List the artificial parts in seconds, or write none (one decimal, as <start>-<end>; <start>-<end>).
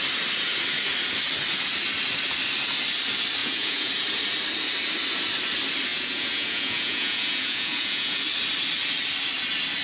3.4-3.9; 5.9-8.2